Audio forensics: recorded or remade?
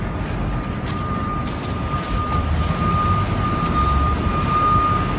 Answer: recorded